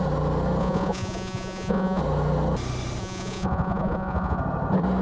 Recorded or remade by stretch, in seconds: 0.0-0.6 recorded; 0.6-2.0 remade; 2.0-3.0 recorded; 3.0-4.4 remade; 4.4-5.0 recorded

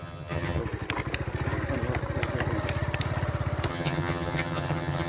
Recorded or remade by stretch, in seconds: 0.0-0.6 remade; 0.6-3.7 recorded; 3.7-5.1 remade

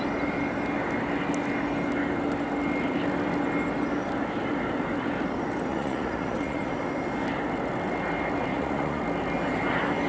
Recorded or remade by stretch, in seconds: 0.0-5.7 recorded; 5.7-6.7 remade; 6.7-8.5 recorded; 8.5-9.0 remade; 9.0-10.1 recorded

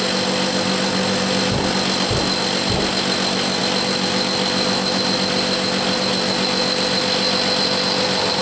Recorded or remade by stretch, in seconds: 0.0-8.4 recorded

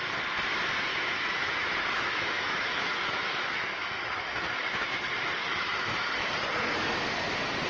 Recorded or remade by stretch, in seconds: 0.0-0.9 recorded; 0.9-4.9 remade; 4.9-5.4 recorded; 5.4-6.3 remade; 6.3-7.7 recorded